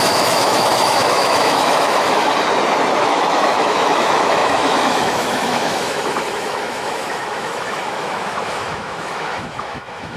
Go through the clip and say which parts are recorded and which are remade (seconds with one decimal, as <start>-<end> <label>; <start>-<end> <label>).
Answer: 0.0-2.3 remade; 2.3-3.0 recorded; 3.0-10.2 remade

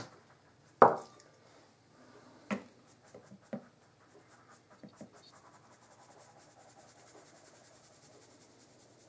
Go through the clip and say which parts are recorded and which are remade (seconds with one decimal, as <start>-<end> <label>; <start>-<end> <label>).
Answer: 0.0-9.1 recorded

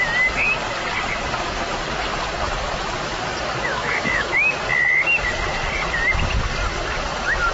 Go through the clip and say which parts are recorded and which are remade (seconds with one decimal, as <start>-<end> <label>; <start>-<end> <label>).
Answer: 0.0-3.7 recorded; 3.7-4.5 remade; 4.5-7.5 recorded

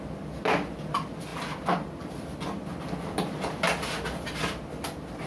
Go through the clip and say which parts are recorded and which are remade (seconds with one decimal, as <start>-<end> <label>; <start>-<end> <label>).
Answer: 0.0-5.3 recorded